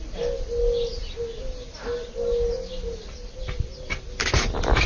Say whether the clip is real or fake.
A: real